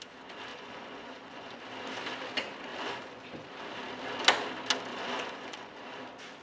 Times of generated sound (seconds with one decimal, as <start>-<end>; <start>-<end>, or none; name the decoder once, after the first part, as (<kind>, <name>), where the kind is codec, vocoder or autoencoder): 0.5-1.6 (vocoder, Vocos); 2.7-3.5; 4.9-5.8